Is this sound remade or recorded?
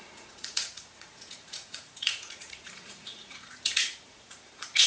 remade